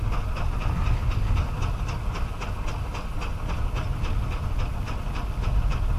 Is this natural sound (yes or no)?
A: yes